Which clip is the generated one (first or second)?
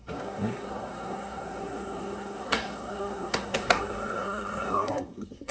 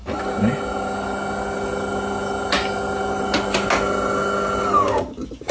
first